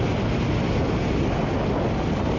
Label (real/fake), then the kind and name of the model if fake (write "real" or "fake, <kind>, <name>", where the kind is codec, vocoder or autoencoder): real